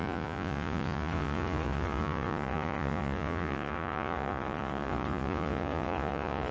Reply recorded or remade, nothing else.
remade